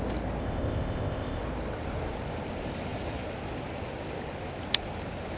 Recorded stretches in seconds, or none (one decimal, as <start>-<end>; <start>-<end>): 0.0-0.4; 1.4-5.4